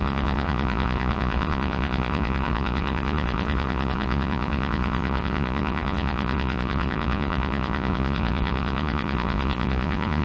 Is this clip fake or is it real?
fake